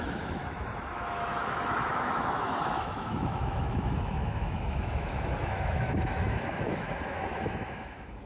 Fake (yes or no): yes